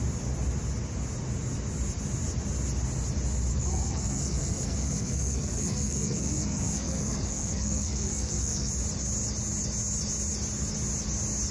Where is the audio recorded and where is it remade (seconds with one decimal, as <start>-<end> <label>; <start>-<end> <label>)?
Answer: 0.0-3.5 recorded; 3.5-8.7 remade; 8.7-11.5 recorded

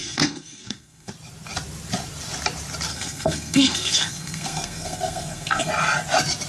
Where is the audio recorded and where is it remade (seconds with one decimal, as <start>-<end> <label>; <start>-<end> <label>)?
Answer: 0.0-1.1 remade; 1.1-2.9 recorded; 2.9-5.7 remade; 5.7-6.5 recorded

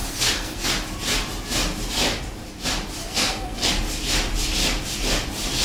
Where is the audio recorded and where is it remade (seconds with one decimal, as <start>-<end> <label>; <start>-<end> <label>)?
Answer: 0.0-0.7 remade; 0.7-3.0 recorded; 3.0-3.7 remade; 3.7-5.6 recorded